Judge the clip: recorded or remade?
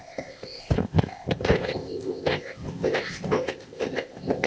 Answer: remade